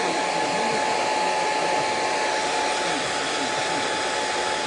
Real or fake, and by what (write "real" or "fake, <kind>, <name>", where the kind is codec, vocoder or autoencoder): real